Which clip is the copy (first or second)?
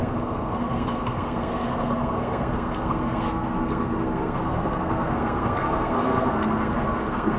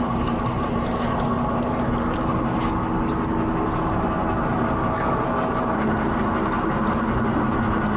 first